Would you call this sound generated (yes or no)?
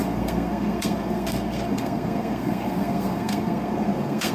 yes